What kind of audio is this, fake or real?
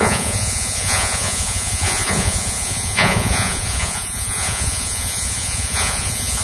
fake